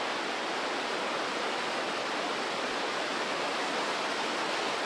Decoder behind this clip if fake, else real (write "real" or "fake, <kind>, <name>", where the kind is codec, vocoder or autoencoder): real